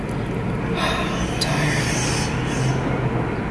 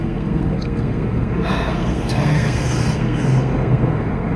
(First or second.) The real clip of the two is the first